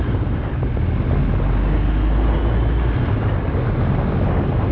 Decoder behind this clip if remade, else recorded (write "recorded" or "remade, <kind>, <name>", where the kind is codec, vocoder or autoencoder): recorded